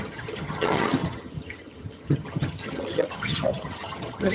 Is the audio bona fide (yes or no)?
no